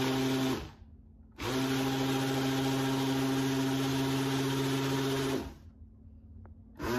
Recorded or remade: recorded